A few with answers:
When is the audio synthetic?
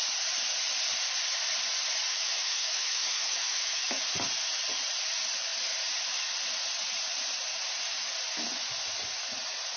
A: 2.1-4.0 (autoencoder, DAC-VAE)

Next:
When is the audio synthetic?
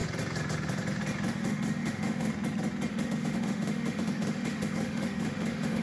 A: 1.3-2.3 (autoencoder, DAC-VAE); 2.9-5.8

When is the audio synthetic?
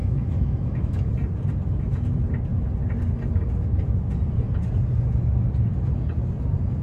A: 0.0-1.1 (autoencoder, DAC-VAE)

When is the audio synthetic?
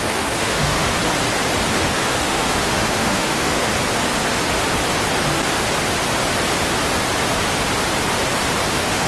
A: 0.0-1.0 (autoencoder, DAC-VAE); 1.9-3.7; 8.7-9.1